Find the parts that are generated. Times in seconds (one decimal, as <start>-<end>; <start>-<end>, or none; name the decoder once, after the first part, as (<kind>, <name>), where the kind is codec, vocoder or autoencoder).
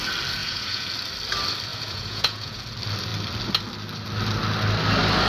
0.4-0.9 (vocoder, Vocos); 1.7-2.6